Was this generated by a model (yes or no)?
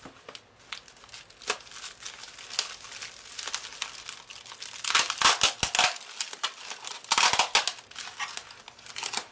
no